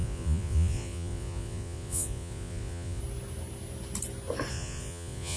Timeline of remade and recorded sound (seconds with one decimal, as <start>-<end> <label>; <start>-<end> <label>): 0.0-3.0 remade; 3.0-4.5 recorded; 4.5-5.4 remade